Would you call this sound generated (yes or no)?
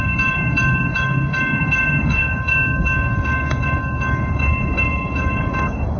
yes